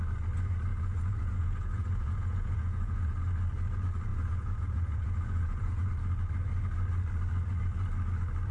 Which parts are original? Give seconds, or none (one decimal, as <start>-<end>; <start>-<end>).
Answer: 0.0-0.7; 3.2-4.1; 5.9-8.5